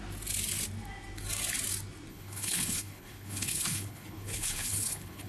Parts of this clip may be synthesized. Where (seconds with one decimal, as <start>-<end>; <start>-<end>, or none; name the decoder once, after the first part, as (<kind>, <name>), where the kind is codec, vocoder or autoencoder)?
2.1-5.3 (codec, HILCodec)